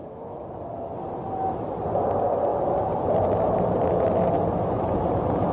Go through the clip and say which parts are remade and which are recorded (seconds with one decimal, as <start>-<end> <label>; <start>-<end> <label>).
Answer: 0.0-0.5 remade; 0.5-5.5 recorded